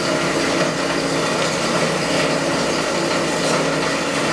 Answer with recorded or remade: recorded